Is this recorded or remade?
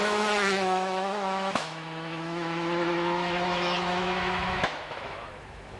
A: remade